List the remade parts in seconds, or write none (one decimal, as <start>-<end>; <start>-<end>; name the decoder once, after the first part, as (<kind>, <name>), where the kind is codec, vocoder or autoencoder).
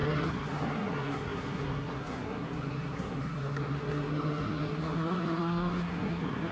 0.0-6.5 (codec, SNAC)